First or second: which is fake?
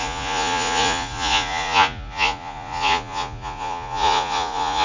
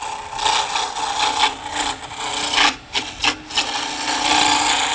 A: first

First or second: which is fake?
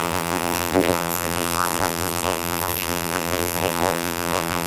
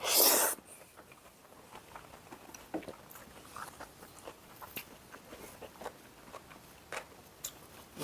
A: first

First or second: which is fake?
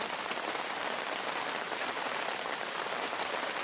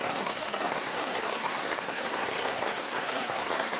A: second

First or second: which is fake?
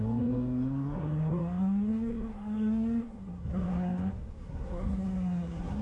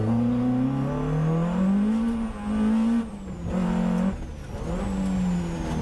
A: first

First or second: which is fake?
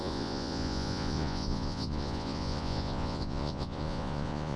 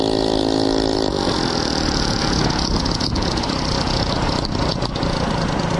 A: first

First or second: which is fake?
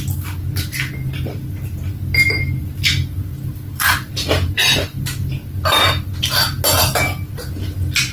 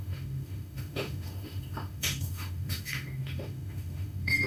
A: second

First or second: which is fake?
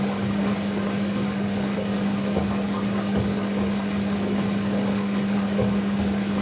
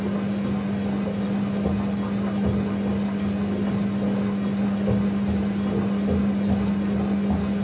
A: first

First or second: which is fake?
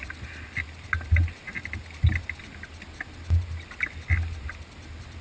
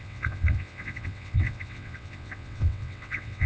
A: second